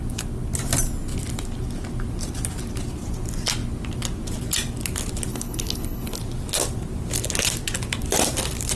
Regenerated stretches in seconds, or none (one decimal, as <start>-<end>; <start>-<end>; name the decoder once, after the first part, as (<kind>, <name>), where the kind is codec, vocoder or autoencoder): 5.3-6.2 (codec, HILCodec)